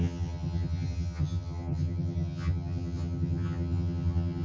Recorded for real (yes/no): no